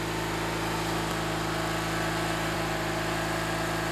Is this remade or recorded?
recorded